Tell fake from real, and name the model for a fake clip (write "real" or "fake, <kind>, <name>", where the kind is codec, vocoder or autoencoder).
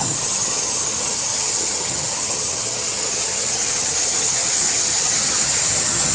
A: fake, vocoder, HiFi-GAN